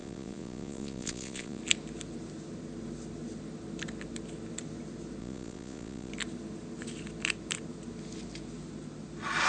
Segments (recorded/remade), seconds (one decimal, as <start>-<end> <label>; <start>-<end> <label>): 0.0-1.6 remade; 1.6-5.2 recorded; 5.2-6.1 remade; 6.1-9.5 recorded